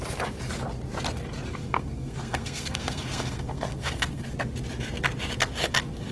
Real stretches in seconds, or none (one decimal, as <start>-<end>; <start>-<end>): 0.0-1.6; 4.3-6.1